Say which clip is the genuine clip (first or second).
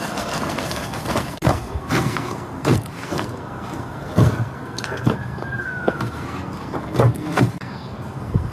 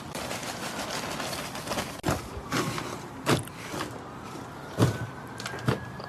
second